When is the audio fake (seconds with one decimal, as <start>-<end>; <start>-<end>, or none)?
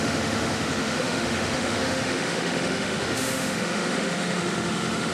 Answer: 0.0-5.1